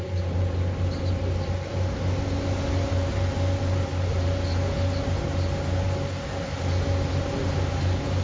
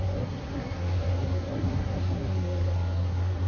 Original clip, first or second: first